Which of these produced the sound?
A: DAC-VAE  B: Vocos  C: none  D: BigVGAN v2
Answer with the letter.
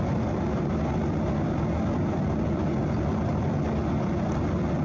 C